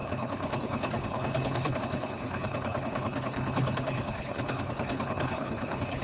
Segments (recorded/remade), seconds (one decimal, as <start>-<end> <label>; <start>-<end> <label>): 0.0-6.0 remade